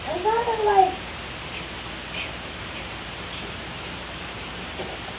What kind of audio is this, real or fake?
real